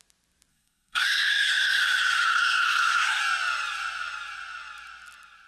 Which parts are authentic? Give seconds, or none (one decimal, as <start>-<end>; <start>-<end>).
0.0-0.5; 3.2-5.5